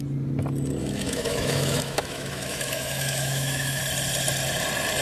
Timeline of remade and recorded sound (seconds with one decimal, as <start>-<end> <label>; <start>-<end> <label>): 0.0-0.8 recorded; 0.8-3.8 remade; 3.8-5.0 recorded